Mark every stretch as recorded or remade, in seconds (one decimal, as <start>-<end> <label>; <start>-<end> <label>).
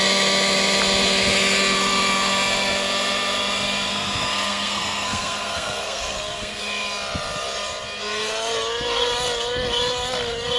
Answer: 0.0-3.9 recorded; 3.9-6.6 remade; 6.6-10.6 recorded